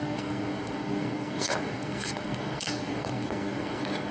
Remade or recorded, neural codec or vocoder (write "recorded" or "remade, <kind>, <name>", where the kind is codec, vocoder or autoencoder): remade, codec, SNAC